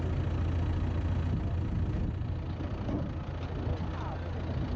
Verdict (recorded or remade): recorded